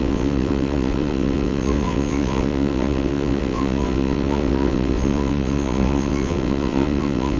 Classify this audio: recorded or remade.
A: remade